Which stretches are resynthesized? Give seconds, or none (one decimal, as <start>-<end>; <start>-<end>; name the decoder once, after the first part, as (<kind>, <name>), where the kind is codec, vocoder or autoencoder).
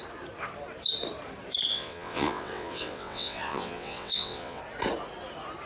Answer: 1.7-4.6 (vocoder, WaveNeXt)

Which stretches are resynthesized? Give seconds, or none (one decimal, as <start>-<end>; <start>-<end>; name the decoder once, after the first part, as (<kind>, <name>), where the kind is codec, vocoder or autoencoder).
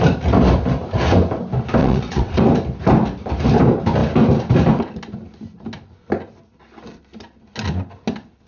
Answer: 1.8-2.4 (vocoder, WaveNeXt)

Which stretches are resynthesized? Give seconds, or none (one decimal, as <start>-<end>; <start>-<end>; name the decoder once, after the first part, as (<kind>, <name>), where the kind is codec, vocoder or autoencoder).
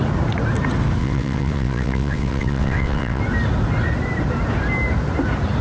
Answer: 1.0-3.2 (vocoder, WaveNeXt)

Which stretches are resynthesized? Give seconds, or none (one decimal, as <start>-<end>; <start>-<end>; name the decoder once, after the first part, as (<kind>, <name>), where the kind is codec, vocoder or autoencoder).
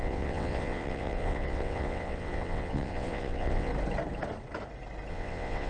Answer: 0.0-3.7 (vocoder, WaveNeXt); 5.1-5.7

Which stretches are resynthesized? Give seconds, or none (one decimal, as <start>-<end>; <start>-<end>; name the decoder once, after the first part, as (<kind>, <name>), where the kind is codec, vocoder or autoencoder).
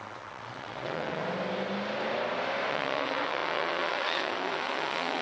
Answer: 0.0-1.2 (vocoder, WaveNeXt); 2.7-5.2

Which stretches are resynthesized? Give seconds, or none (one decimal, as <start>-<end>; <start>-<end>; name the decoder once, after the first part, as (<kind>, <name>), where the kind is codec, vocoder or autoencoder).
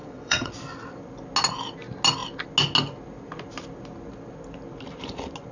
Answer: 0.0-0.5 (vocoder, WaveNeXt)